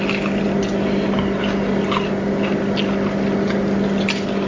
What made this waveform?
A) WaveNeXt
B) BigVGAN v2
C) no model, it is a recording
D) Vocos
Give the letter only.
C